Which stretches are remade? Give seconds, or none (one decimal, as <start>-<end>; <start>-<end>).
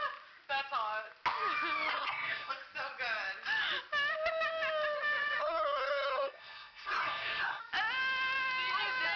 1.9-2.5; 5.4-7.6